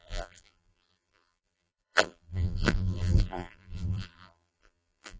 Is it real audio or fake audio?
fake